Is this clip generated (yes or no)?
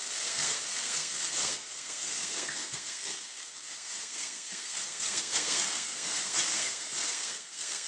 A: yes